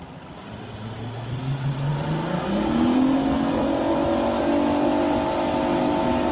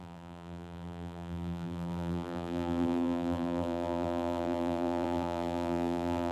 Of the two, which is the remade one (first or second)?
second